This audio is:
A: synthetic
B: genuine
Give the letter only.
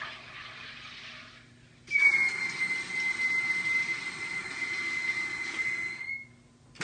B